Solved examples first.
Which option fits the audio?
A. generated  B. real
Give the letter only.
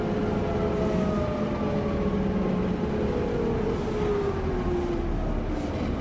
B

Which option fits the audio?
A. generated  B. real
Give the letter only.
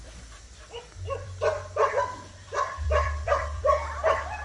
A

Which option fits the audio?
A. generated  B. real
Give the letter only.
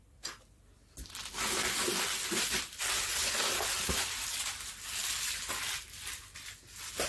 B